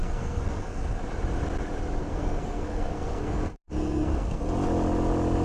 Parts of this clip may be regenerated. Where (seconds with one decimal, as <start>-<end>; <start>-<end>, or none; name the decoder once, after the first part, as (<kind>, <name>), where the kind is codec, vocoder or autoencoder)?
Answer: 0.0-1.0 (codec, SNAC); 2.0-4.4